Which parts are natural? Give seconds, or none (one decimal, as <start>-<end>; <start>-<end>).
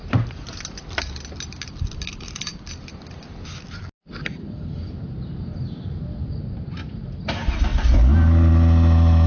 0.0-9.3